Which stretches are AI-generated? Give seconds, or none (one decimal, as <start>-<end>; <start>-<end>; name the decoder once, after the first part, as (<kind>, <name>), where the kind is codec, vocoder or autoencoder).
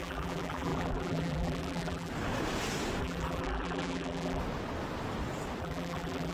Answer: 0.0-2.1 (vocoder, BigVGAN v2); 3.0-4.4; 5.6-6.3